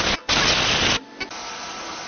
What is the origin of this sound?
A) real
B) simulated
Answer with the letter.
A